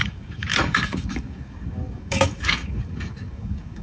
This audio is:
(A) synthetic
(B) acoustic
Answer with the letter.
A